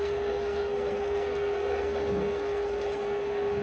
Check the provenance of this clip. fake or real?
fake